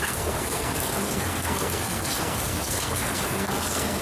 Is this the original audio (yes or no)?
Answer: no